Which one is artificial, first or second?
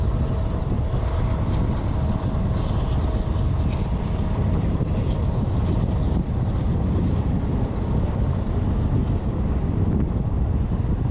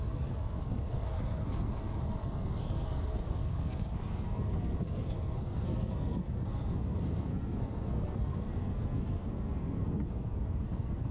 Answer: second